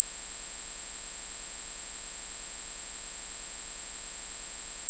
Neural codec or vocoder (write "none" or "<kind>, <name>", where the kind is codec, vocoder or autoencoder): autoencoder, DAC-VAE